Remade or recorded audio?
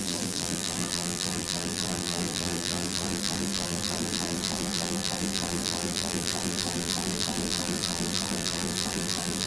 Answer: remade